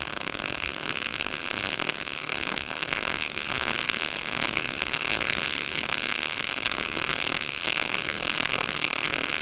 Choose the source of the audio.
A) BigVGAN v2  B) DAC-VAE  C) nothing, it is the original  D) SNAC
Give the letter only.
D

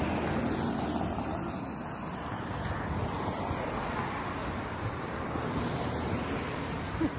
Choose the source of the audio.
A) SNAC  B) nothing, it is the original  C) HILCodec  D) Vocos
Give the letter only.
B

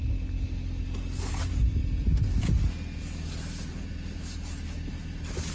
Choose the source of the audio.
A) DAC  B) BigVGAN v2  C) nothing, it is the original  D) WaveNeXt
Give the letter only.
C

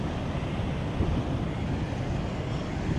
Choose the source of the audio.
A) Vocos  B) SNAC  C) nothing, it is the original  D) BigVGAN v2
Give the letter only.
C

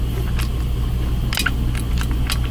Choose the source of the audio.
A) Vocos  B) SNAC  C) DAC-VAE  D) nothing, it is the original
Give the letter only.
D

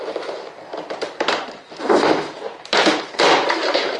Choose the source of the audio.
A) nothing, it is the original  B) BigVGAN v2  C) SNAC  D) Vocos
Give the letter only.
B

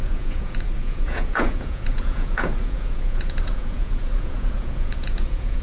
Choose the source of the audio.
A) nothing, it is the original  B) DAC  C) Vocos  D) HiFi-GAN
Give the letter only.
C